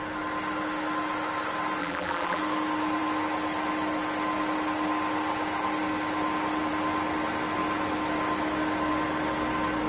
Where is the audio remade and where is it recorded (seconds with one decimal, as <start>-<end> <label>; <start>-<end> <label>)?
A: 0.0-1.8 recorded; 1.8-2.4 remade; 2.4-9.9 recorded